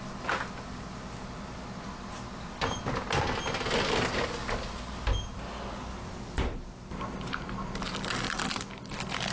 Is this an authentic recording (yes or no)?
yes